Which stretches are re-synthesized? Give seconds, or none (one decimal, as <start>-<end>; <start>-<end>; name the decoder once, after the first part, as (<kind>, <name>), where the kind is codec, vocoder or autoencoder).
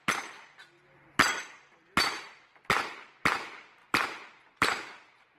3.8-5.4 (vocoder, BigVGAN v2)